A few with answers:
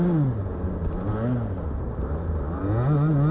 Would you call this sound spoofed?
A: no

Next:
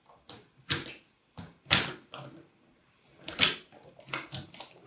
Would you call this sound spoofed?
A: no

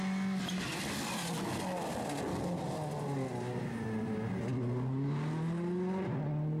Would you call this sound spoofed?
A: no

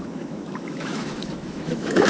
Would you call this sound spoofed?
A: yes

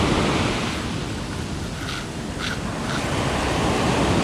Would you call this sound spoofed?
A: no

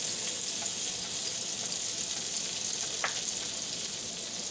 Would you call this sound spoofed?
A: no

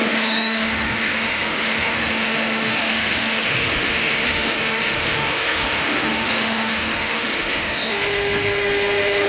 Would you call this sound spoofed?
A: yes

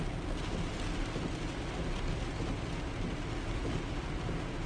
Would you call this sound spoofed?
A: no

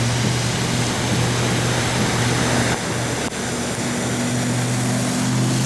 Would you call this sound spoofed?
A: no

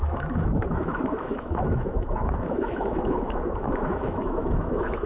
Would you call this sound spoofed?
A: yes